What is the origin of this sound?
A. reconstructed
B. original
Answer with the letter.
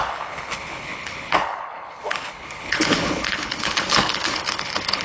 A